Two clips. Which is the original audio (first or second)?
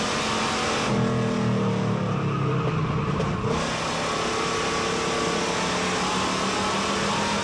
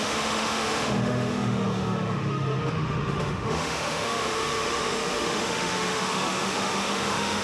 first